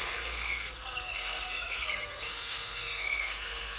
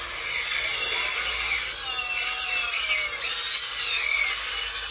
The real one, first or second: second